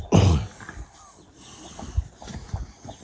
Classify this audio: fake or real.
real